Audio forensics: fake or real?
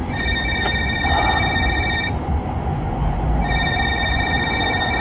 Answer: fake